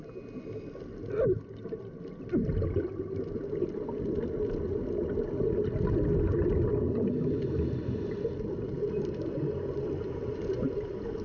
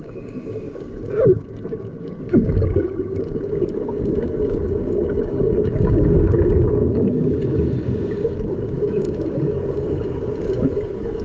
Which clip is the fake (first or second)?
second